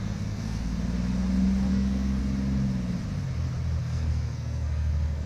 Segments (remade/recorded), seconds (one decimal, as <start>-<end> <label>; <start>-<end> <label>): 0.0-0.7 remade; 0.7-1.7 recorded; 1.7-2.2 remade; 2.2-3.8 recorded; 3.8-5.3 remade